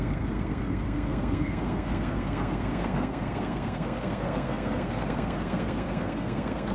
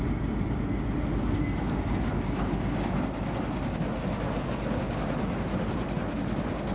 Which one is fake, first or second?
first